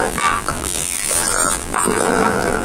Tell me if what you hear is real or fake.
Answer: fake